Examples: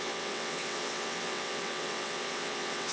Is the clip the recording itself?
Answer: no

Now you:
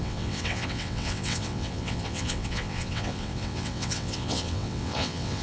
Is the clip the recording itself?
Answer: no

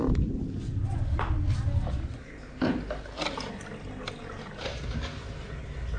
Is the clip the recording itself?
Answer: yes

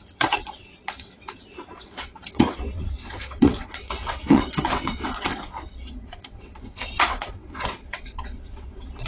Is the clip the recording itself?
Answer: no